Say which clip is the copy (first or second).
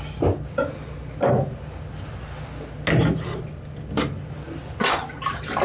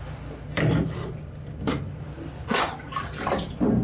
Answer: second